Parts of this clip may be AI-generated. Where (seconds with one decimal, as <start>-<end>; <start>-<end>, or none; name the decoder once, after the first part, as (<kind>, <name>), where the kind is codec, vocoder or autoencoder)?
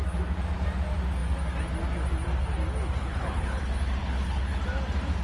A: 3.0-3.6 (codec, HILCodec); 4.0-4.6